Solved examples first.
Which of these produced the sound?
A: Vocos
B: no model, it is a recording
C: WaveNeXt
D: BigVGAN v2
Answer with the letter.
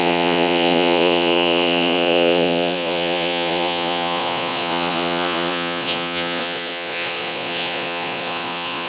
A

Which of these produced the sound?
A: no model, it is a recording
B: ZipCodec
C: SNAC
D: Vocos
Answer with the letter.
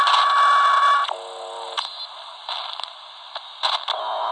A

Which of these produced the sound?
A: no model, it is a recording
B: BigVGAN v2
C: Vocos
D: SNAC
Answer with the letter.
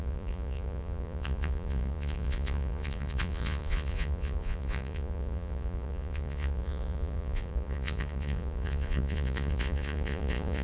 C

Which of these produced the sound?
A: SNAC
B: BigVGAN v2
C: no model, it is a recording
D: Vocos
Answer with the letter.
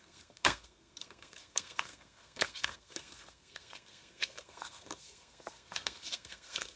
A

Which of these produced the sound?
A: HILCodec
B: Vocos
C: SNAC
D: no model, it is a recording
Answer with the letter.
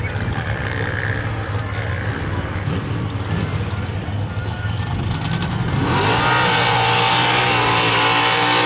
D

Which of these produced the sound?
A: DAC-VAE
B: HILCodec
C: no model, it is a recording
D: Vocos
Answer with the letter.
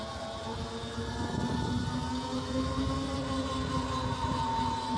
C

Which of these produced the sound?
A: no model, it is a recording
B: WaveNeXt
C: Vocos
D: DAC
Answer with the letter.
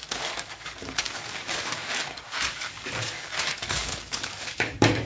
D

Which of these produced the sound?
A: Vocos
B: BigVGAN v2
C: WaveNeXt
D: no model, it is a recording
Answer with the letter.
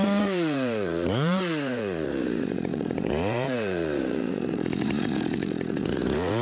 A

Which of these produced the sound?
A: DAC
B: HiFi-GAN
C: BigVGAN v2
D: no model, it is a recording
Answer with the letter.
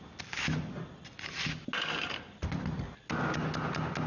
D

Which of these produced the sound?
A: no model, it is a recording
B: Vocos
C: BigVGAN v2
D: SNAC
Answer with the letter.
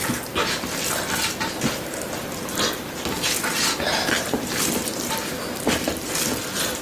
A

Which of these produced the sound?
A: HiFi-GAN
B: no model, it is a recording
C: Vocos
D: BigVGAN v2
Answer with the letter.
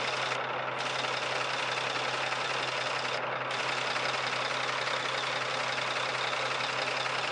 B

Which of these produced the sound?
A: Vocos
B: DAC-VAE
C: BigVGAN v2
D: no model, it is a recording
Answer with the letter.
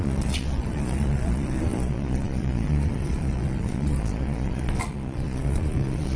A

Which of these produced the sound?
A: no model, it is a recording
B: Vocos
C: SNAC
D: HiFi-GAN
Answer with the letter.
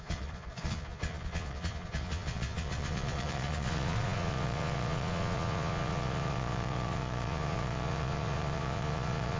B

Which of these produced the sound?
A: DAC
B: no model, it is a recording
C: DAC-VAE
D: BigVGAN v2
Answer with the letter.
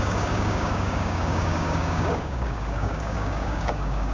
A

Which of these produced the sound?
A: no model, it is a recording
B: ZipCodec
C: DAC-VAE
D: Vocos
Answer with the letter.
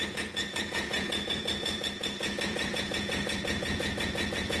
D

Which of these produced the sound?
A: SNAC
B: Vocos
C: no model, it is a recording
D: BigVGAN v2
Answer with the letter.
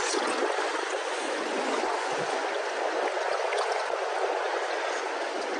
B